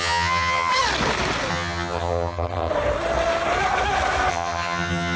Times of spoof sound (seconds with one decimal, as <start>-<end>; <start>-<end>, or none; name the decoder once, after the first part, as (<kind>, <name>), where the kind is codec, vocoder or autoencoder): 0.0-0.7 (vocoder, HiFi-GAN); 1.5-2.7; 4.3-5.2